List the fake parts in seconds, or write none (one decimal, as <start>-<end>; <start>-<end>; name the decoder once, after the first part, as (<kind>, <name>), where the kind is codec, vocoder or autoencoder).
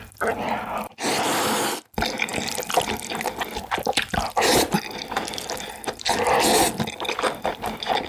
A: none